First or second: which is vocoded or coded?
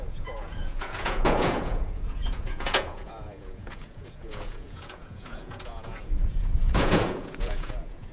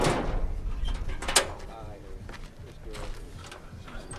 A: first